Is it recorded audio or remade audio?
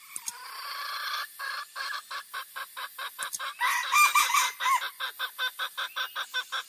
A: recorded